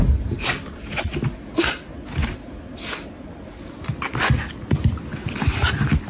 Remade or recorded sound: recorded